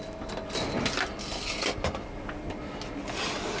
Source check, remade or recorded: recorded